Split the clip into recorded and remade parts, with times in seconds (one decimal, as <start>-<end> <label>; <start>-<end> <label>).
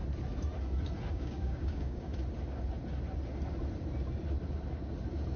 0.0-1.1 recorded; 1.1-2.1 remade; 2.1-5.4 recorded